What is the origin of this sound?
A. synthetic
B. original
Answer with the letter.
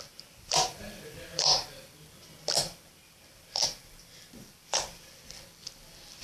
A